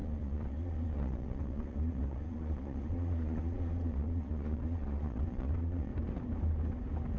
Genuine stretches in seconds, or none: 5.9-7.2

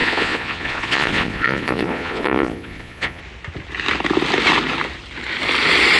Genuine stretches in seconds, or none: 3.2-6.0

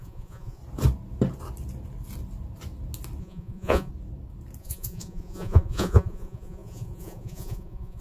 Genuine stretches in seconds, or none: 0.6-3.2; 3.9-4.6

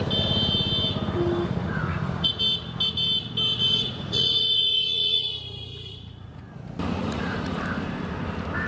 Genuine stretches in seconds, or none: 0.0-1.6; 2.4-3.6; 6.4-7.0; 7.6-8.7

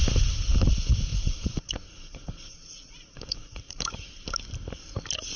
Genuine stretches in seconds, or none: 0.0-1.1; 4.3-5.4

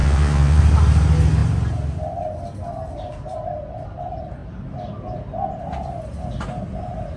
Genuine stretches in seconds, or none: 0.6-7.2

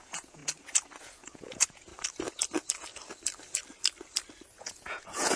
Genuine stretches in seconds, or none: 0.4-1.0; 1.9-4.5

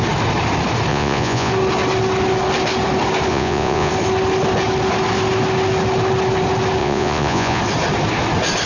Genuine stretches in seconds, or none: 0.0-0.9; 1.5-3.3; 3.9-6.8; 7.6-8.7